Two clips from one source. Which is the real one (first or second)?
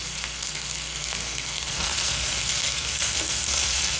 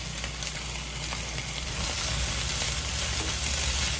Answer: second